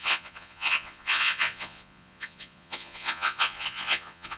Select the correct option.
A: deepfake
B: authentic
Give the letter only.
A